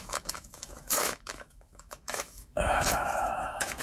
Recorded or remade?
remade